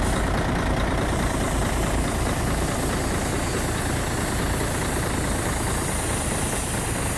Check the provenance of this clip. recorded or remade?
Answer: recorded